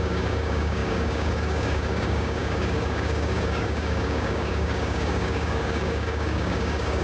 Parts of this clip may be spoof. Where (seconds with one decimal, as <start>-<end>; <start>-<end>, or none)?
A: 0.0-7.0